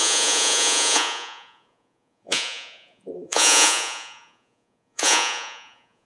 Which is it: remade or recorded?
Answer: remade